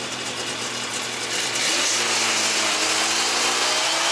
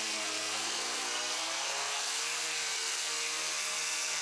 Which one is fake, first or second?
second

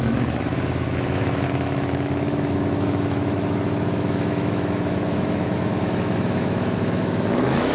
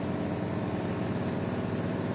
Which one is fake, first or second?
first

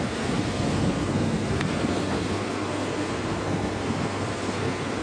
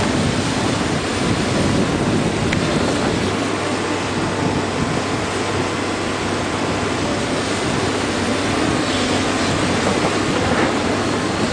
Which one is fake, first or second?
first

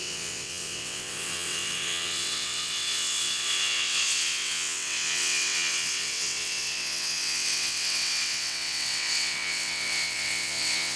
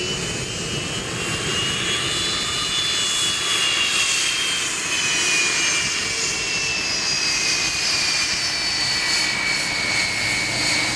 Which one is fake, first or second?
first